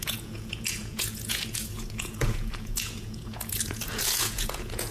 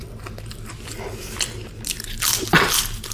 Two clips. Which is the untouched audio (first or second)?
second